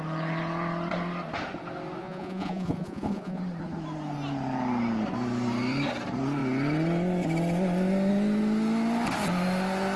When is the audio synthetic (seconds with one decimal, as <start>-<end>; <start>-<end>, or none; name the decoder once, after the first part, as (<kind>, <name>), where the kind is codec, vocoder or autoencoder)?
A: 2.0-3.4 (vocoder, Vocos)